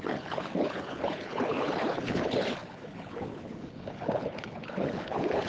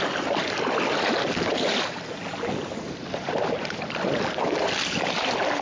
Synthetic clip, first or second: first